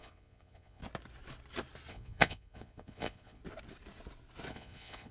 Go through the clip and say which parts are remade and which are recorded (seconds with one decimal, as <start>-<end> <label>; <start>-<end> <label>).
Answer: 0.0-0.8 remade; 0.8-1.9 recorded; 1.9-3.4 remade; 3.4-4.5 recorded; 4.5-5.1 remade